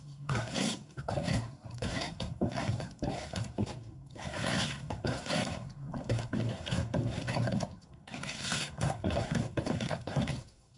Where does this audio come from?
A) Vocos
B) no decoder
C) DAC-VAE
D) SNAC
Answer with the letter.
D